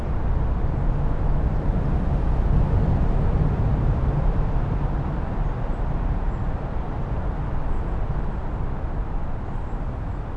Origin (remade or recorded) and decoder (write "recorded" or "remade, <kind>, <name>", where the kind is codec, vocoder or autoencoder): recorded